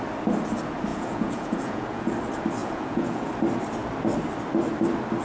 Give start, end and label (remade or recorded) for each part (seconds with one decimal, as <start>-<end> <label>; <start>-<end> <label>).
0.0-0.9 recorded; 0.9-2.1 remade; 2.1-2.6 recorded; 2.6-3.3 remade; 3.3-5.2 recorded